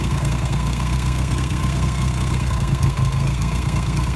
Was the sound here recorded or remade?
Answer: remade